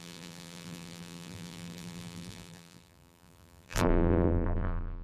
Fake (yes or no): yes